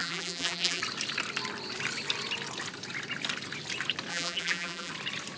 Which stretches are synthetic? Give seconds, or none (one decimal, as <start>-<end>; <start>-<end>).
0.0-0.8; 4.1-4.9